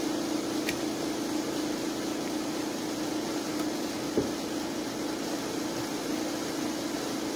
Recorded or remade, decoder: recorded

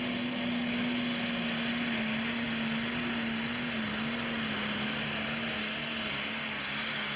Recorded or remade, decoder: recorded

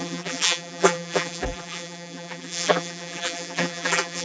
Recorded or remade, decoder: remade, vocoder, BigVGAN v2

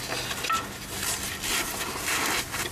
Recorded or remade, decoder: recorded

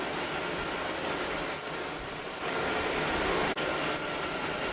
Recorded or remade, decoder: recorded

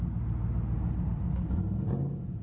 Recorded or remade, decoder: recorded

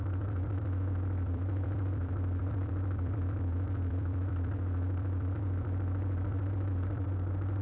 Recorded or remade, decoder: remade, vocoder, BigVGAN v2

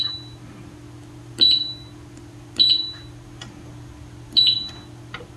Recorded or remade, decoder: recorded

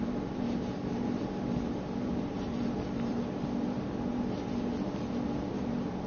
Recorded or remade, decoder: remade, vocoder, BigVGAN v2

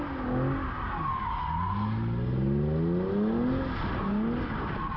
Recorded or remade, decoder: recorded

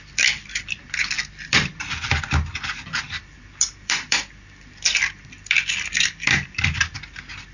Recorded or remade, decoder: remade, vocoder, BigVGAN v2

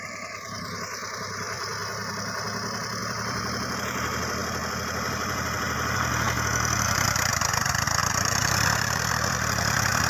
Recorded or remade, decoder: remade, vocoder, BigVGAN v2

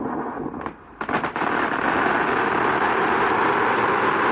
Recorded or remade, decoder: remade, vocoder, BigVGAN v2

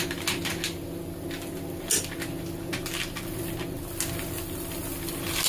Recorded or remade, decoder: recorded